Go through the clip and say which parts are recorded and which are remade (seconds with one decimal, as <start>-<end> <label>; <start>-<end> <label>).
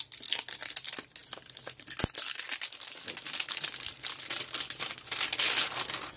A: 0.0-6.2 recorded